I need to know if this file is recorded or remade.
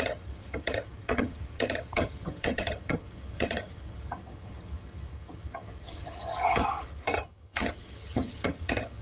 remade